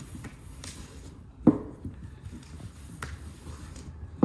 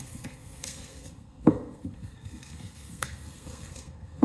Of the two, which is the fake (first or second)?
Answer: second